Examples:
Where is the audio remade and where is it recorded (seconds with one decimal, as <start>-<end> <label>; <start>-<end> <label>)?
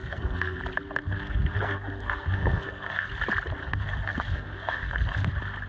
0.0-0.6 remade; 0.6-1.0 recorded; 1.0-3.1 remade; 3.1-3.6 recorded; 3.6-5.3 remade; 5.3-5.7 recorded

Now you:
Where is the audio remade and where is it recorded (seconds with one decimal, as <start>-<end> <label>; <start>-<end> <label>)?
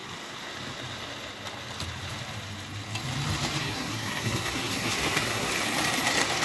0.0-3.6 recorded; 3.6-5.5 remade; 5.5-6.4 recorded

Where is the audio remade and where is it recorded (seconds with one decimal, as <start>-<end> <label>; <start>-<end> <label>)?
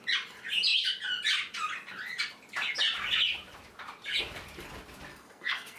0.0-5.1 recorded; 5.1-5.8 remade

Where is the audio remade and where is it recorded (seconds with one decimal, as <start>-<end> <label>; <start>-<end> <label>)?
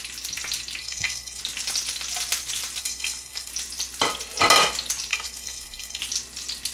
0.0-0.8 recorded; 0.8-1.4 remade; 1.4-2.8 recorded; 2.8-3.5 remade; 3.5-5.1 recorded; 5.1-6.0 remade; 6.0-6.7 recorded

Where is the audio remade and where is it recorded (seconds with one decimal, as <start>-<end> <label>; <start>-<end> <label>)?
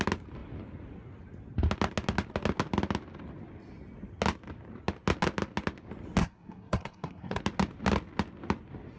0.0-6.2 recorded; 6.2-7.4 remade; 7.4-9.0 recorded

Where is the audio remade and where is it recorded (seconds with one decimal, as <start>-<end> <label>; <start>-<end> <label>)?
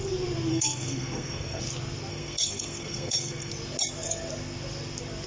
0.0-0.5 recorded; 0.5-1.6 remade; 1.6-2.1 recorded; 2.1-3.5 remade; 3.5-5.3 recorded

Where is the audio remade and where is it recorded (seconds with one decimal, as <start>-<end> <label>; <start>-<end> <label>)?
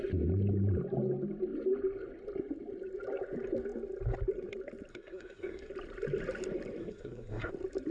0.0-4.9 recorded; 4.9-5.7 remade; 5.7-6.8 recorded; 6.8-7.5 remade; 7.5-7.9 recorded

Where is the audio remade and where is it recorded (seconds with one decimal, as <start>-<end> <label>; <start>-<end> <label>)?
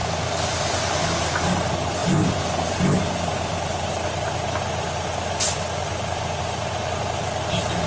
0.0-7.9 recorded